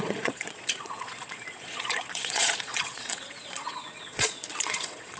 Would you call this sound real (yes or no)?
no